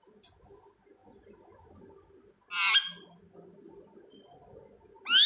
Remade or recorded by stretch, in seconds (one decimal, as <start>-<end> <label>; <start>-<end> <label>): 0.0-5.3 recorded